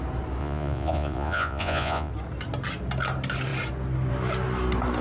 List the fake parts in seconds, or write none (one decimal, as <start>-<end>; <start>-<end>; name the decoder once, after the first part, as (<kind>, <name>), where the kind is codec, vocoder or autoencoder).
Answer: 0.4-2.1 (vocoder, Vocos)